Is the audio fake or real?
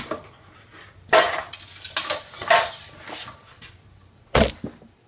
real